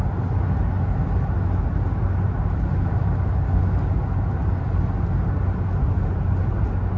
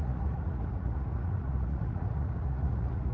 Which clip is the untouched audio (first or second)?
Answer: first